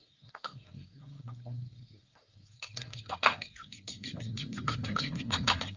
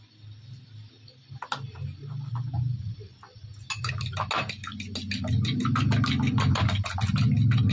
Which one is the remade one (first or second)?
first